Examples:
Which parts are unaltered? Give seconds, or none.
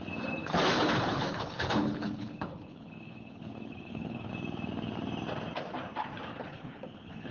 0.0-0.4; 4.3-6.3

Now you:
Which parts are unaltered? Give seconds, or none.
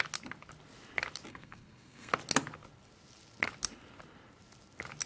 0.0-1.3; 2.1-5.1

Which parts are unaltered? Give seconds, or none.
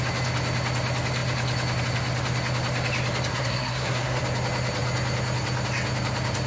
0.0-3.3; 4.2-6.5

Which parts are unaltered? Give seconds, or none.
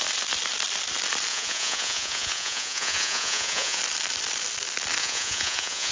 0.0-1.3; 3.8-5.0